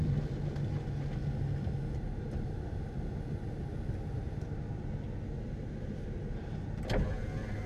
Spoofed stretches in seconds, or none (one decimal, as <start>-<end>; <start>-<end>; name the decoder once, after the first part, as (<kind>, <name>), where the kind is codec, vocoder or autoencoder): none